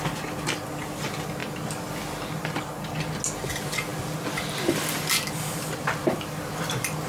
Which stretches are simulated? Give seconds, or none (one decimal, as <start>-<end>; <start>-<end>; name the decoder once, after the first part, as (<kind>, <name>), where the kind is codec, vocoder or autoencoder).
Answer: none